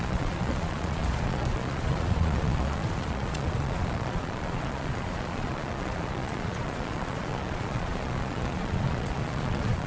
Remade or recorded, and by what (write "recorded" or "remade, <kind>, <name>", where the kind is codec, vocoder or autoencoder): remade, vocoder, Vocos